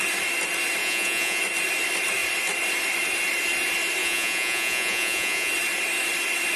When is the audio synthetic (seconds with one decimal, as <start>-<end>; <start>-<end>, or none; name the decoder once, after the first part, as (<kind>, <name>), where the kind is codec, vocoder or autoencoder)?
0.8-1.4 (vocoder, Vocos); 4.0-5.5